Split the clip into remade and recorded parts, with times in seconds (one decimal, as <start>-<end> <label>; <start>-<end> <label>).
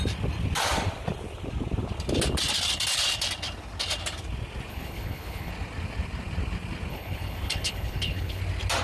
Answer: 0.0-4.7 recorded; 4.7-5.5 remade; 5.5-6.9 recorded; 6.9-8.4 remade; 8.4-8.8 recorded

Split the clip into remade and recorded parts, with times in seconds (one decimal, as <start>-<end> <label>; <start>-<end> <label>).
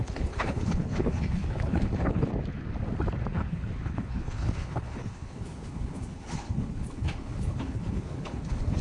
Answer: 0.0-2.3 remade; 2.3-3.3 recorded; 3.3-8.8 remade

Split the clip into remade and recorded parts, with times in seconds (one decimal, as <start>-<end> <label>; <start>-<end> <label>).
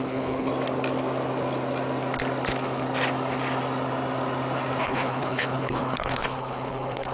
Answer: 0.0-0.5 remade; 0.5-4.8 recorded; 4.8-7.1 remade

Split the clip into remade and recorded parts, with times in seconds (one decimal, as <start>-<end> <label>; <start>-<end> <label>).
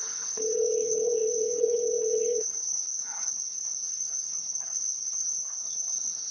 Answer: 0.0-6.3 remade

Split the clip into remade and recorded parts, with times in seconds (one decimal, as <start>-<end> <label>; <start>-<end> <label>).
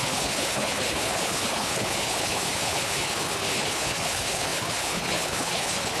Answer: 0.0-6.0 remade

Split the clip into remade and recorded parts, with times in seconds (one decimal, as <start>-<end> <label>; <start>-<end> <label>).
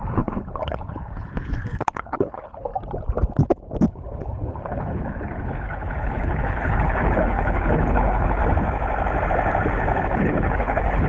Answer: 0.0-2.7 remade; 2.7-3.9 recorded; 3.9-8.4 remade; 8.4-10.1 recorded; 10.1-11.1 remade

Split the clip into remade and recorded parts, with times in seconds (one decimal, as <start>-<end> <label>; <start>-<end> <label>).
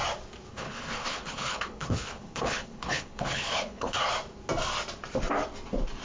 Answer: 0.0-0.5 recorded; 0.5-4.1 remade; 4.1-6.0 recorded